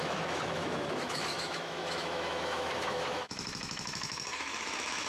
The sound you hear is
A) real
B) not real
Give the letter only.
B